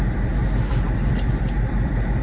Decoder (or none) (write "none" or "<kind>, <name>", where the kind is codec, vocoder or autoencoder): vocoder, BigVGAN v2